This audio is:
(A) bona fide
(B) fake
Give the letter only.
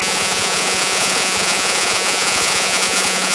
B